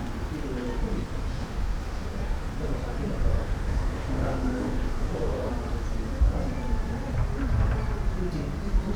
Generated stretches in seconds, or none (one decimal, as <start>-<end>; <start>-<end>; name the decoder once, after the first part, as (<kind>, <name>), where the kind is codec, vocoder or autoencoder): 1.3-2.5 (autoencoder, DAC-VAE); 3.3-5.5